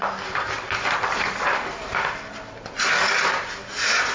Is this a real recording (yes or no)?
yes